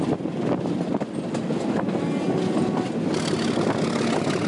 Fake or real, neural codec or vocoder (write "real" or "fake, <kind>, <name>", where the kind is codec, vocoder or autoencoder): real